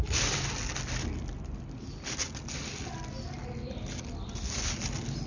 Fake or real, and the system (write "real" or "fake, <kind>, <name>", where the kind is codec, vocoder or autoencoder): real